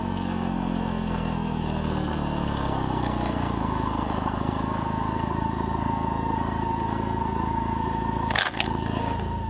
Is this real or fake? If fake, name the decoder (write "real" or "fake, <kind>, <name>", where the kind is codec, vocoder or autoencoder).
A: fake, codec, SNAC